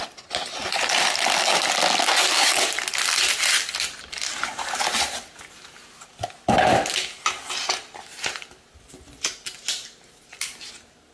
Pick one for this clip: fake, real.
real